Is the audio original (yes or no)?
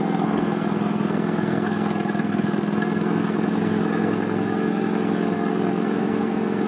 no